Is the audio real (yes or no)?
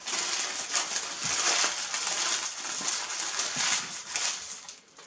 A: yes